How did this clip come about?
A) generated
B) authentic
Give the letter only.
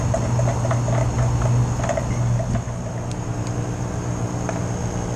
B